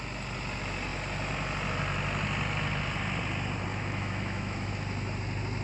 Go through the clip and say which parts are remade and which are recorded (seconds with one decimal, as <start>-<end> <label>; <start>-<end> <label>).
0.0-3.7 recorded; 3.7-4.7 remade; 4.7-5.6 recorded